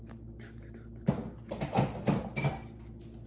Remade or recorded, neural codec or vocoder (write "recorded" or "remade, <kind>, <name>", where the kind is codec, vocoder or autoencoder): recorded